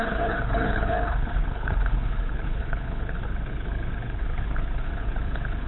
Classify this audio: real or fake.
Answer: fake